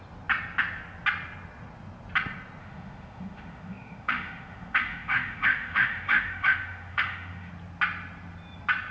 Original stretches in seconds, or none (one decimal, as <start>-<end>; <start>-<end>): 0.0-2.6; 7.5-8.9